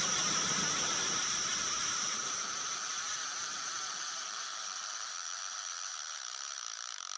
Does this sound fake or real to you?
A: fake